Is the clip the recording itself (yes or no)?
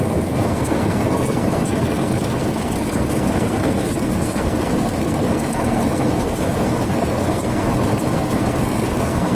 no